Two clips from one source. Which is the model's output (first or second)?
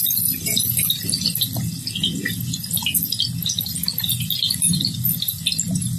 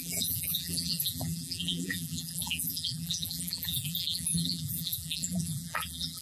second